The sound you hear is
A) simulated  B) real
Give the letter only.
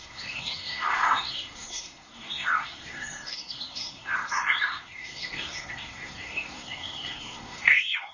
A